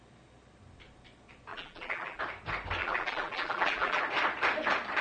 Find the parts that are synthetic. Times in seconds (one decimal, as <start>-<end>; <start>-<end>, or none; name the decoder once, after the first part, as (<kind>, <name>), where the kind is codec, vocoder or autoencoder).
1.5-2.2 (vocoder, BigVGAN v2); 2.8-4.0